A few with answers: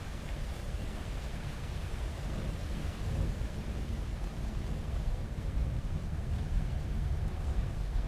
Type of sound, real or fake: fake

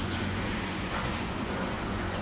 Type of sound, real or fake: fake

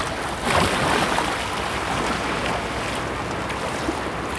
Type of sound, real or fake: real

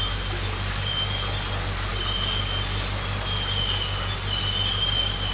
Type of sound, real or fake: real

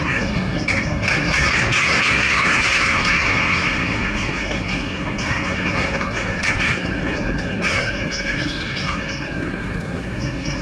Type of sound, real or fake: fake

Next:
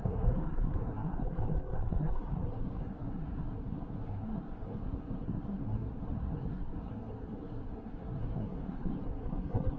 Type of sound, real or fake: fake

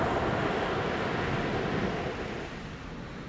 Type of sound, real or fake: real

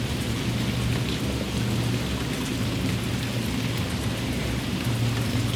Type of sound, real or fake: real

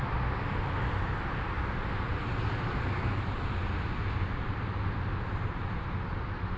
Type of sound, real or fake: real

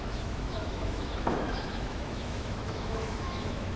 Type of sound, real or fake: fake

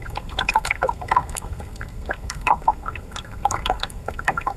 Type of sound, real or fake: fake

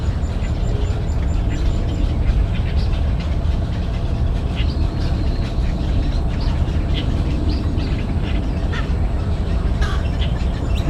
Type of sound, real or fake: real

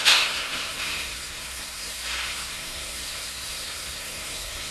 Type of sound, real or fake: fake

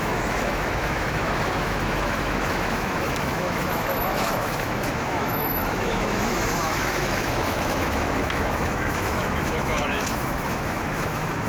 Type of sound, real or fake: fake